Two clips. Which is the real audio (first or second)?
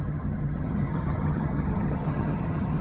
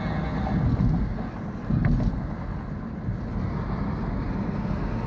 second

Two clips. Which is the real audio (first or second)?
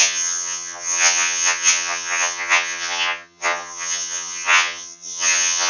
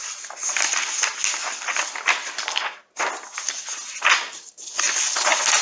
second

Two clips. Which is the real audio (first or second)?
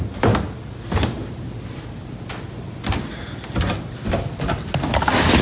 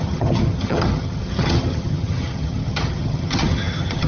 first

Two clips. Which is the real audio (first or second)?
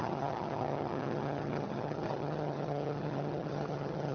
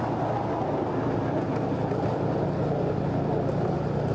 second